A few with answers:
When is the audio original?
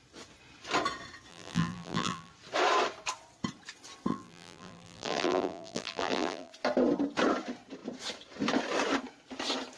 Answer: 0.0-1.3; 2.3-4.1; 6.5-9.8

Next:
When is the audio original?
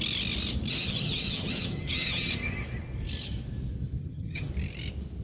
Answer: 0.0-0.7; 2.3-4.0; 4.5-5.2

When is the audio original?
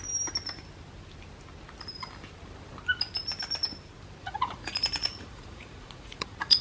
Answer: 0.0-4.2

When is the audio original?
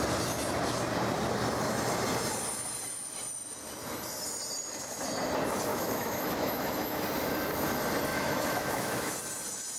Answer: 0.0-5.7; 7.0-8.1; 9.1-9.8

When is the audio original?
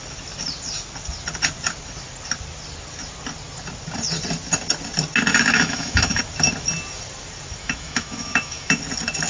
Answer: 0.0-5.3; 6.2-7.6; 8.8-9.3